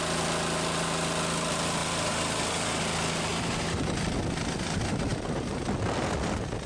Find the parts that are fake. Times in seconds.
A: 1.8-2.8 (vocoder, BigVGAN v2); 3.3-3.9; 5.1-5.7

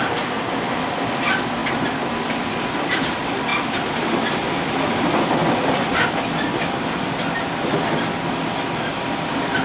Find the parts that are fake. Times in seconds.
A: 0.0-3.5 (vocoder, BigVGAN v2); 4.0-5.4

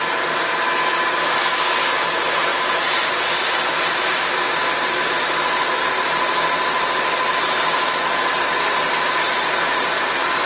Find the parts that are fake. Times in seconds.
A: none

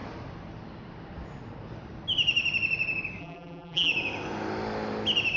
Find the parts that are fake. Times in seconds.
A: 3.2-3.9 (vocoder, BigVGAN v2)

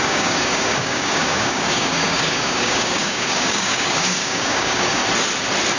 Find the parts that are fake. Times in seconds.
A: 0.0-5.0 (codec, DAC)

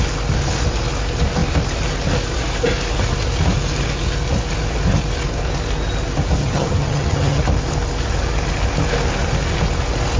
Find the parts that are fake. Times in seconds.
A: 6.4-7.4 (vocoder, HiFi-GAN)

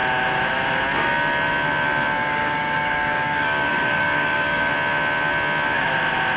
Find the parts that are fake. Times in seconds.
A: 2.2-4.7 (codec, DAC)

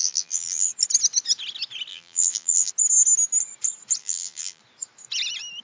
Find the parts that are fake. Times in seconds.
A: 0.0-0.7 (vocoder, BigVGAN v2); 1.9-2.7; 4.0-4.6